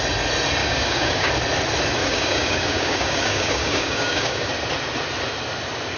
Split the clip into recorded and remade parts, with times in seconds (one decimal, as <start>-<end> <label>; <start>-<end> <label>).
0.0-0.6 recorded; 0.6-1.3 remade; 1.3-2.0 recorded; 2.0-4.5 remade; 4.5-6.0 recorded